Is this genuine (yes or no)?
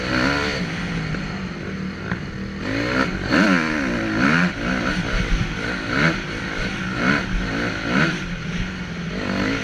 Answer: yes